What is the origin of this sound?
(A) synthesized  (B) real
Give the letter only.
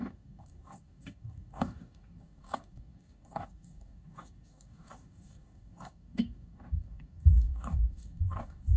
A